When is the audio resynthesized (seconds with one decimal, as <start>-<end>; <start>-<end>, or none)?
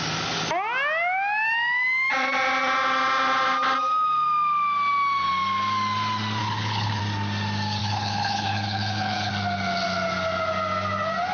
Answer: 6.4-7.0; 7.8-9.3